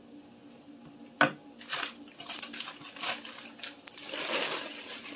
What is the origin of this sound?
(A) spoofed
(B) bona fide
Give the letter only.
B